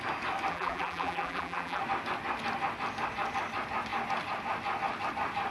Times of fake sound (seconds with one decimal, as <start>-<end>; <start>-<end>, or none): 0.5-1.8